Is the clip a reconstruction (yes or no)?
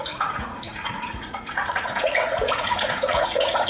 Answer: yes